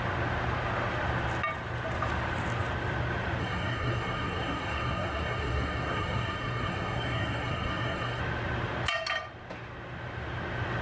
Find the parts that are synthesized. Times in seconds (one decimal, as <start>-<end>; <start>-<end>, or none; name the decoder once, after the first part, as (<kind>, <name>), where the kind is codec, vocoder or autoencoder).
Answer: 3.4-8.2 (codec, SNAC)